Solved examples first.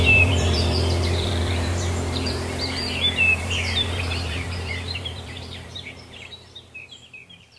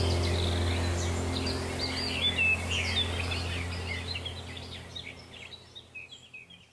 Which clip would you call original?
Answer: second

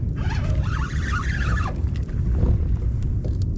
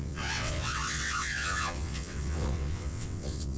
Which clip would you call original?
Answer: first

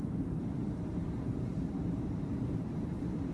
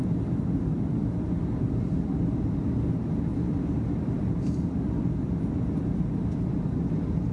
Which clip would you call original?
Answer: second